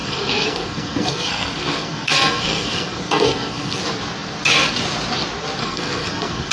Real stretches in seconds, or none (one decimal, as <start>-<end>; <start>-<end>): 3.8-5.6